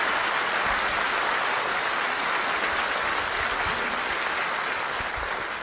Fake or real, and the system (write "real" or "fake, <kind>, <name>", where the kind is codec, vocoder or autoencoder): real